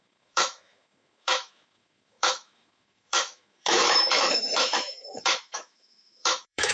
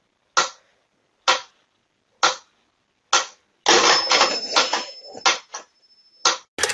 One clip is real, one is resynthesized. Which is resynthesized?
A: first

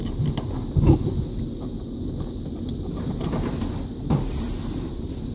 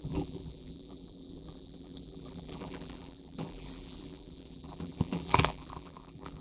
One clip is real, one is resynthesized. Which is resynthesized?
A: second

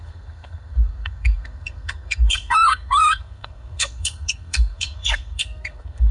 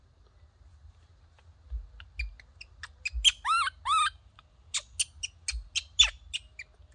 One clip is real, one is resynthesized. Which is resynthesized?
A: first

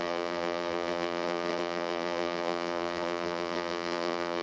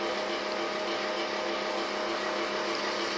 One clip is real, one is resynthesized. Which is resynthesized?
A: first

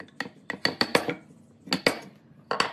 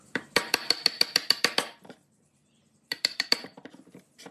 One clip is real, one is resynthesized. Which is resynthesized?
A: second